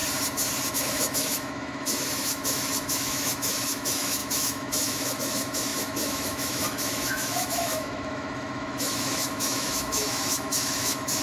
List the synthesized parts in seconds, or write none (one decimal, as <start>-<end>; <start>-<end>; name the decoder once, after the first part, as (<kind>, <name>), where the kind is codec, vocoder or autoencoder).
0.7-11.2 (autoencoder, DAC-VAE)